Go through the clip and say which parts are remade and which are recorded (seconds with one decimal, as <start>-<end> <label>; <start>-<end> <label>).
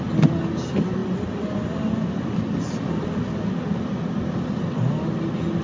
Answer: 0.0-5.6 recorded